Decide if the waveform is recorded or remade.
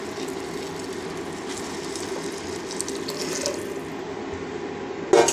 recorded